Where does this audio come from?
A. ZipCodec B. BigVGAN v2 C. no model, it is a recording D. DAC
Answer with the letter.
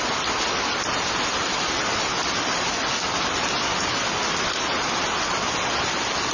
C